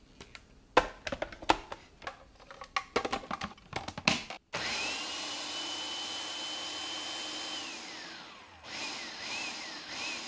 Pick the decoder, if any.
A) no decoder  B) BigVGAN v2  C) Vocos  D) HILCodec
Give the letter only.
A